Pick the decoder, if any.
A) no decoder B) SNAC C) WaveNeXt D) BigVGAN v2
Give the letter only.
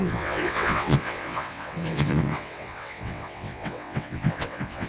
C